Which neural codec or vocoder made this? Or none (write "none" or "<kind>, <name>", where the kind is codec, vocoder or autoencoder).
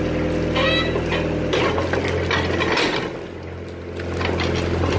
none